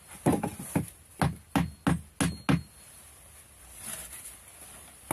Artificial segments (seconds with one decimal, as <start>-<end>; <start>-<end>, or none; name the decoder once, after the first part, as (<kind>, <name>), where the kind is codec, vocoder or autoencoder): none